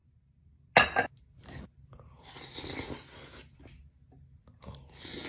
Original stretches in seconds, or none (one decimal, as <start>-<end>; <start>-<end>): 0.0-5.3